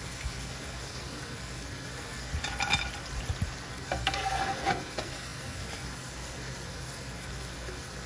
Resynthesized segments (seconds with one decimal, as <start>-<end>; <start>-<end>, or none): 0.0-2.3; 3.7-8.1